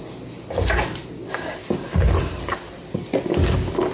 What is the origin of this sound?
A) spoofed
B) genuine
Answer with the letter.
B